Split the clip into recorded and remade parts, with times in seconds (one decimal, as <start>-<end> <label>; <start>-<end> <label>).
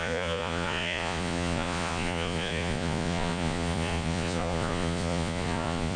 0.0-6.0 remade